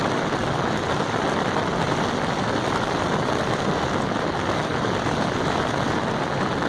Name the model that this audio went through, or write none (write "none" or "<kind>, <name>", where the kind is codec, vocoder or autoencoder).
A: none